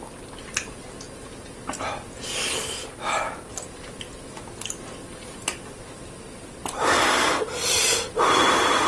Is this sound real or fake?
real